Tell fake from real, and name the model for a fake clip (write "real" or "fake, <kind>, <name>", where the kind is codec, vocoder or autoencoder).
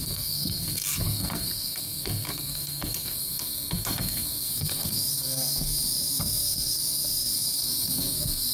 fake, codec, SNAC